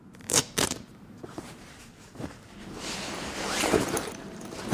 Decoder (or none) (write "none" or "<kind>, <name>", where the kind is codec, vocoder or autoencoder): vocoder, BigVGAN v2